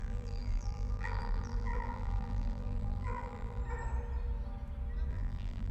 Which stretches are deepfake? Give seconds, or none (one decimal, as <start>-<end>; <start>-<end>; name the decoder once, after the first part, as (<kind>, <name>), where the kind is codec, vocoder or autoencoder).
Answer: 0.0-3.6 (vocoder, BigVGAN v2); 5.1-5.7